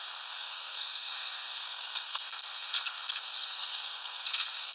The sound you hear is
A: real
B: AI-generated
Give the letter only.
B